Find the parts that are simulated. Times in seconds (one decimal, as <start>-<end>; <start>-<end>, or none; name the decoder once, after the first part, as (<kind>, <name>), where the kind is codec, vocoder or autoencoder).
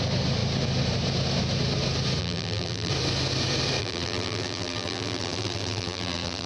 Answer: 2.2-2.9 (vocoder, BigVGAN v2); 3.8-6.5